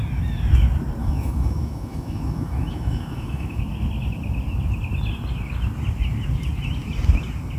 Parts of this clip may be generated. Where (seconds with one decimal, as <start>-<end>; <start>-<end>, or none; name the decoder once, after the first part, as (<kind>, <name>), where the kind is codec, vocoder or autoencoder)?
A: 1.0-3.6 (autoencoder, DAC-VAE)